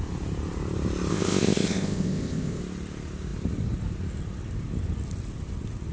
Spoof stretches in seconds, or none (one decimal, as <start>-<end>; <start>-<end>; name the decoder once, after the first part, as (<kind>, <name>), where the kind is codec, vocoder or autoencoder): 1.1-2.6 (codec, ZipCodec)